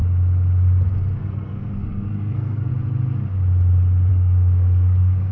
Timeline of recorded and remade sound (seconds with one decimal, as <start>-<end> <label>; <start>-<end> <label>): 0.0-1.2 recorded; 1.2-2.7 remade; 2.7-4.1 recorded; 4.1-5.3 remade